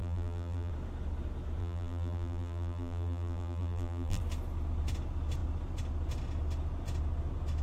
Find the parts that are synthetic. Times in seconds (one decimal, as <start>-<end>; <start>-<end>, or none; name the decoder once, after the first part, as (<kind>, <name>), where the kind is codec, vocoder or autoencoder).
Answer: 0.0-0.7 (vocoder, BigVGAN v2); 1.6-4.2

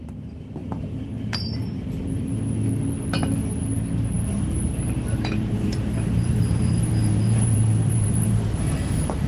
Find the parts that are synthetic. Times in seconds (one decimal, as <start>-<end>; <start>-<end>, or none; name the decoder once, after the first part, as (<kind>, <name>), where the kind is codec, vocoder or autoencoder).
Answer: 0.6-2.4 (vocoder, BigVGAN v2); 4.3-9.3

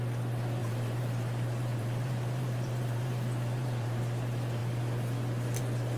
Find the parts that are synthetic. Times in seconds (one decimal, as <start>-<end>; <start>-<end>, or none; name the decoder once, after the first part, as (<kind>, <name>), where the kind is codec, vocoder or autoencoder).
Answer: 0.6-4.0 (vocoder, BigVGAN v2)

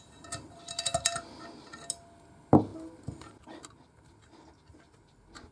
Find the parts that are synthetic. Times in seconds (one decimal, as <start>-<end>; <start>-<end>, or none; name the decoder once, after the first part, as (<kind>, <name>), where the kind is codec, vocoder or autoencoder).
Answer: none

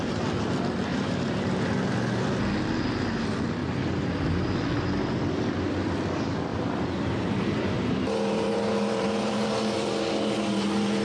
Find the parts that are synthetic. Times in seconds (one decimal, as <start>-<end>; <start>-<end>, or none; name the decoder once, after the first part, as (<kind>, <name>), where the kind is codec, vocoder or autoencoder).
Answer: 0.9-1.7 (vocoder, BigVGAN v2); 6.5-9.9

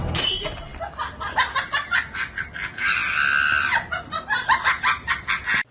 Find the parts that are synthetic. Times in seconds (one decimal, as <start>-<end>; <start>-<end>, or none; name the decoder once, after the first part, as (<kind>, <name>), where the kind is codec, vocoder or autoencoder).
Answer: none

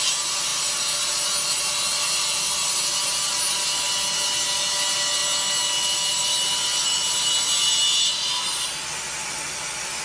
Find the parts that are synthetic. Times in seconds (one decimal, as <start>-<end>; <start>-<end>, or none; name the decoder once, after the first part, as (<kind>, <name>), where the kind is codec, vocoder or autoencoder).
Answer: none